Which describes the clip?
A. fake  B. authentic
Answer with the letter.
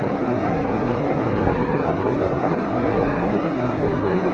A